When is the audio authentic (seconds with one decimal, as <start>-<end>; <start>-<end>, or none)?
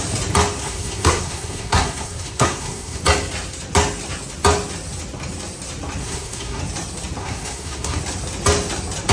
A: 0.0-0.6; 3.0-6.0; 6.6-7.2; 8.0-9.1